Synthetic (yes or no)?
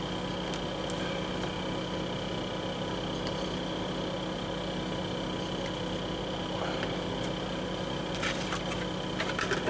no